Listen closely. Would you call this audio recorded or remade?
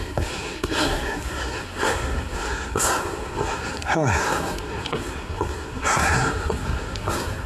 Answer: remade